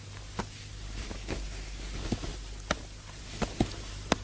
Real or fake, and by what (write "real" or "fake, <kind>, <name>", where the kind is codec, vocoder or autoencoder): real